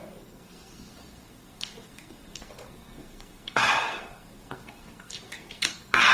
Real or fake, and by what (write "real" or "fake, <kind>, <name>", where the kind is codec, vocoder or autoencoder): fake, codec, SNAC